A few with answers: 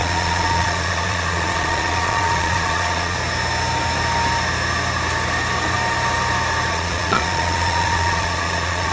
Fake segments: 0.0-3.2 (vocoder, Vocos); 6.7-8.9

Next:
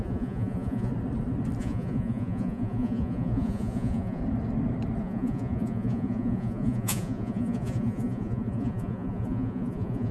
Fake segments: 0.0-0.9 (vocoder, Vocos); 1.6-4.2; 5.0-10.1

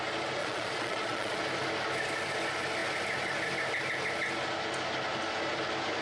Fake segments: 0.4-1.4 (vocoder, Vocos)

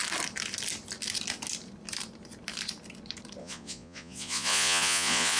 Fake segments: 3.4-5.4 (vocoder, Vocos)

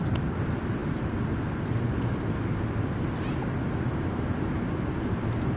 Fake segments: none

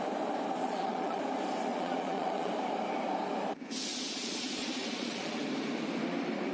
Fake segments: 0.6-1.2 (vocoder, Vocos); 1.7-2.5; 3.9-5.4

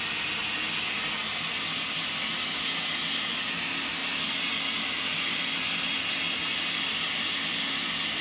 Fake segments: none

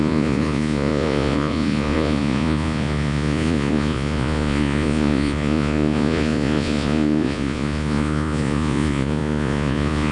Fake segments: 0.0-10.1 (vocoder, Vocos)